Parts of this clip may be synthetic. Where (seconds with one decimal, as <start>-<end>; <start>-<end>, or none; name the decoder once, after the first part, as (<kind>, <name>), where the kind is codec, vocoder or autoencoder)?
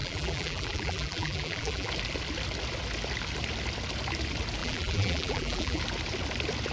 0.0-1.9 (vocoder, BigVGAN v2); 4.6-5.8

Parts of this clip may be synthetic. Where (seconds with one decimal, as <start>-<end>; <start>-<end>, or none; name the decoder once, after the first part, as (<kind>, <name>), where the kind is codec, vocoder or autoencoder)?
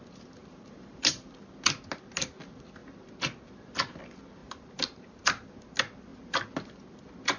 0.4-1.3 (vocoder, BigVGAN v2); 4.4-5.2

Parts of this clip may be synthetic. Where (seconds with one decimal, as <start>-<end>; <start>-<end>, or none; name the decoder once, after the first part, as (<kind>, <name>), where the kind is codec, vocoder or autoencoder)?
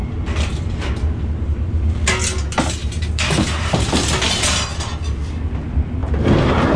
0.0-0.8 (vocoder, BigVGAN v2); 2.8-4.1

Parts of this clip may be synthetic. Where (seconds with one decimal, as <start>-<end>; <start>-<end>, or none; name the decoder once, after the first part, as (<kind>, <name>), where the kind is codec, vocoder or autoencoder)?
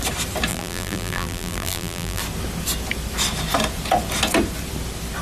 0.5-2.2 (vocoder, BigVGAN v2)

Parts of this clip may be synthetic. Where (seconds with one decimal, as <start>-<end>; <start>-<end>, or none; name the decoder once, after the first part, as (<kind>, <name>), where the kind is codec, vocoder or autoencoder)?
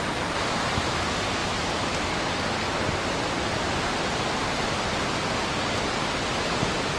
none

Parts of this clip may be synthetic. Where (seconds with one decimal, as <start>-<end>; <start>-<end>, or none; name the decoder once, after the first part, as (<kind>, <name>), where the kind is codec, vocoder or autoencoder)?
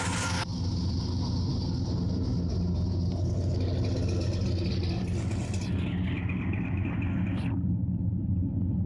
0.5-1.0 (vocoder, BigVGAN v2)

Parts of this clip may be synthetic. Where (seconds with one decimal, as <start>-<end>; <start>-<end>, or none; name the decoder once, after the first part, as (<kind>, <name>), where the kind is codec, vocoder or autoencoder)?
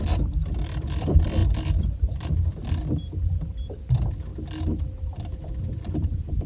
0.0-4.3 (vocoder, BigVGAN v2); 5.0-6.5